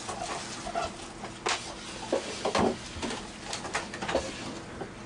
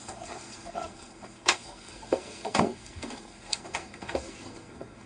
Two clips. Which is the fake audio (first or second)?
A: second